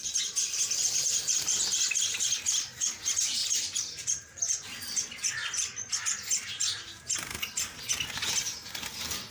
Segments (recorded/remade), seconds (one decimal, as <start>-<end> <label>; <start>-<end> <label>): 0.0-3.4 recorded; 3.4-5.9 remade; 5.9-9.3 recorded